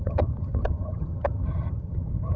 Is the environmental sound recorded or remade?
remade